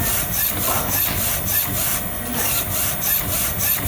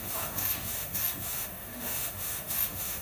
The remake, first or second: second